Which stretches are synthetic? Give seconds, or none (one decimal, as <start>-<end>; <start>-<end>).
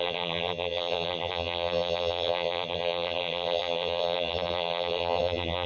0.0-5.7